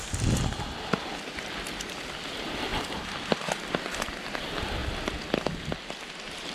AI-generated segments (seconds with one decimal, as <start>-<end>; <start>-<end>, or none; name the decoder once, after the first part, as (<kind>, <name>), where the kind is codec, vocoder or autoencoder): 0.0-2.7 (vocoder, BigVGAN v2); 4.0-4.8; 5.6-6.5

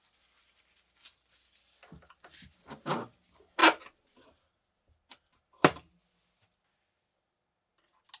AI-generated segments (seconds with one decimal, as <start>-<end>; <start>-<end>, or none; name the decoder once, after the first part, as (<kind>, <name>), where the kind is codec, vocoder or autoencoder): none